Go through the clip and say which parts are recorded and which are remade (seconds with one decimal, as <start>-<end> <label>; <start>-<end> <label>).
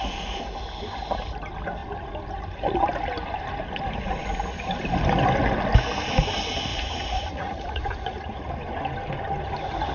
0.0-6.7 recorded; 6.7-8.5 remade; 8.5-9.9 recorded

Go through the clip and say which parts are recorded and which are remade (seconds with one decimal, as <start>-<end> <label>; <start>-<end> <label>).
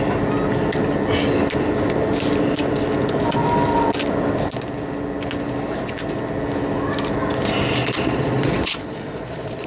0.0-7.8 recorded; 7.8-9.7 remade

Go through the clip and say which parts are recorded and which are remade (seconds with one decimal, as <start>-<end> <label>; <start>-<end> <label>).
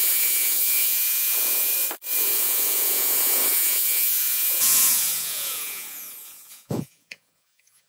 0.0-1.7 remade; 1.7-2.2 recorded; 2.2-7.9 remade